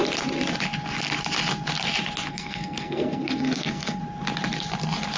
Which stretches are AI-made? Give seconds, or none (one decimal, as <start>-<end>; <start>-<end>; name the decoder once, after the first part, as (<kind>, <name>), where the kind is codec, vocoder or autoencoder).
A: 2.3-4.0 (codec, SNAC)